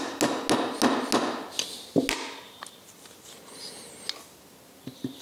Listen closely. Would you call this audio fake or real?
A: real